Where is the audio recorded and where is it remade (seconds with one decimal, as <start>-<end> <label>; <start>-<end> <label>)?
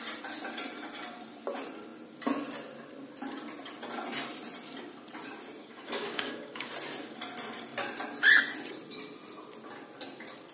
0.0-5.6 recorded; 5.6-6.7 remade; 6.7-10.5 recorded